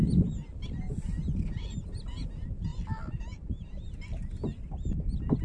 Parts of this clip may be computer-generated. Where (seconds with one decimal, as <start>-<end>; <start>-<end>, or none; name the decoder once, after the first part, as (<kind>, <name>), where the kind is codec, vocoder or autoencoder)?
none